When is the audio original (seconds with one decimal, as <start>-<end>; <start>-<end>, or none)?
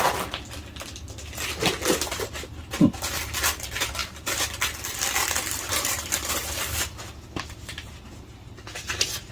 0.0-4.0; 4.7-9.3